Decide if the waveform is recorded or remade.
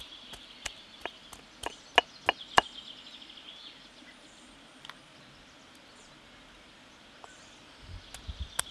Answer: recorded